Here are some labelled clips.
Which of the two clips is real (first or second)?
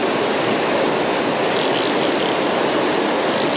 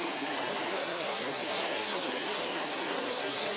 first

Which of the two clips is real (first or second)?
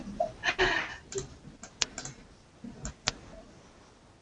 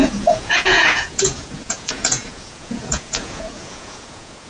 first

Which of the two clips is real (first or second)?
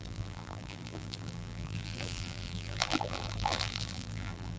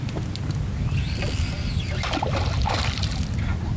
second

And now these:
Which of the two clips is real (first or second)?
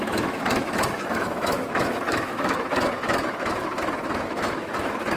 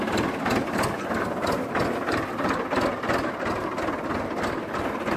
second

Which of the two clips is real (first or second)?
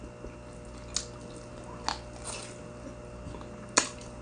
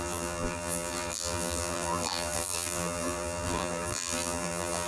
first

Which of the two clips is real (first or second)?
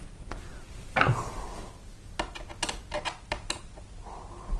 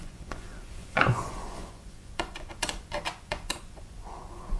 first